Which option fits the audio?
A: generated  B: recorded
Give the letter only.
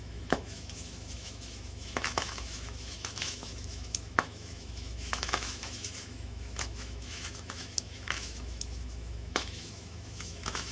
A